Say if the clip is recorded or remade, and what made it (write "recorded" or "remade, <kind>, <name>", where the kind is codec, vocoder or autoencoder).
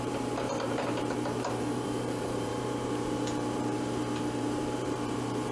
remade, vocoder, BigVGAN v2